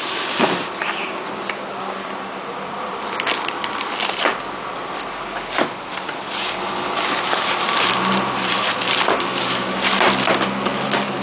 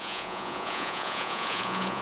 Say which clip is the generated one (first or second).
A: second